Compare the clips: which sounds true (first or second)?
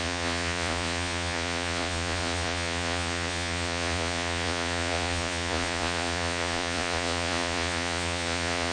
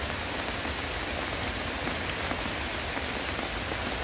second